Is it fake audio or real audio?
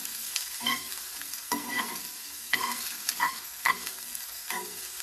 fake